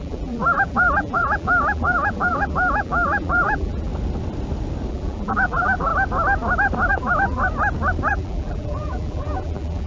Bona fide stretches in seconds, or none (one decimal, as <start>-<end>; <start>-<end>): 3.9-4.9; 5.9-6.9; 7.4-8.1